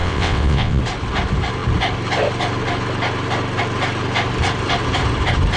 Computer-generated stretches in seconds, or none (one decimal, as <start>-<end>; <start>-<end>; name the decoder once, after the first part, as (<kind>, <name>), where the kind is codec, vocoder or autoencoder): 0.0-0.8 (vocoder, WaveNeXt)